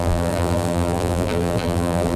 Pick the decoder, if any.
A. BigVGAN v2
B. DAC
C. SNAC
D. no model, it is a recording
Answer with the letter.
A